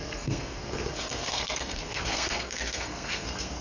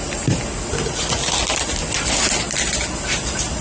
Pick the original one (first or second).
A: second